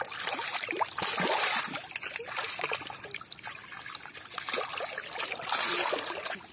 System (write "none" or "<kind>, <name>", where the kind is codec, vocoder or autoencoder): none